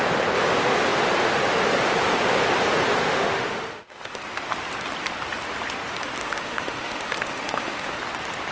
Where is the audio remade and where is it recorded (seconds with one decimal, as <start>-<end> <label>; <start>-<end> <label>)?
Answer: 0.0-3.0 recorded; 3.0-4.2 remade; 4.2-6.2 recorded; 6.2-8.0 remade; 8.0-8.5 recorded